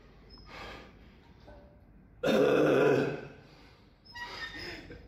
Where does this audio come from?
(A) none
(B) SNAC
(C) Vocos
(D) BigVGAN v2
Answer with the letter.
D